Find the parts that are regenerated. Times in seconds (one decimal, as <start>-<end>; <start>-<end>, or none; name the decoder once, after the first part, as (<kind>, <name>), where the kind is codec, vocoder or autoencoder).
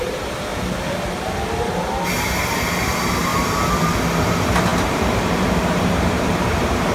0.0-0.5 (vocoder, BigVGAN v2); 2.2-3.3; 4.2-6.9